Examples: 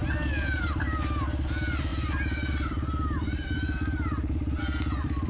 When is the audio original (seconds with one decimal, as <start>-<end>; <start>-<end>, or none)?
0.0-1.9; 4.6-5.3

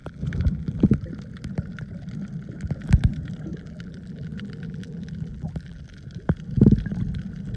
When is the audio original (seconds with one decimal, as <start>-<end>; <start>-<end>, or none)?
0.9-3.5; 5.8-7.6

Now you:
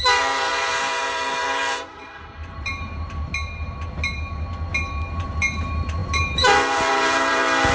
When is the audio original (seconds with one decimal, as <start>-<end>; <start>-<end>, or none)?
3.3-5.1